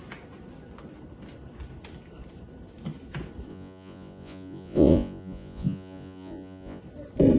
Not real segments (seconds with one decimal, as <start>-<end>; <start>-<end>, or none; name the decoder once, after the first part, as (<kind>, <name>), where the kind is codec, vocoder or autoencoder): 3.5-6.8 (vocoder, Vocos)